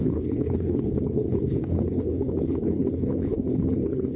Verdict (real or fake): fake